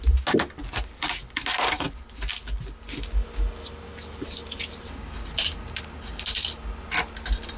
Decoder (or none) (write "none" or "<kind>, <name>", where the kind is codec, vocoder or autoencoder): none